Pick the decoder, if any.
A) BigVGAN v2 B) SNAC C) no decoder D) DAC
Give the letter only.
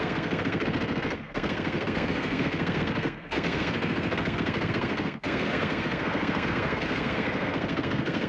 B